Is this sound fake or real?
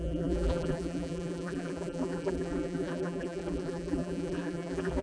fake